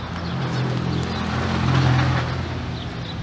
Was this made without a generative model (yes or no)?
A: yes